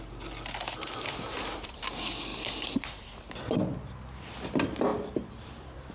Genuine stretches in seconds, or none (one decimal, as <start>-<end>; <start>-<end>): 0.0-1.3; 1.8-2.3; 3.2-4.9